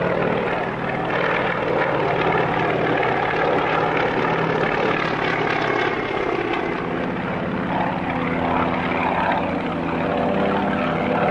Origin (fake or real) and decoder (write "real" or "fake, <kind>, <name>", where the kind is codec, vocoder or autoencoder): real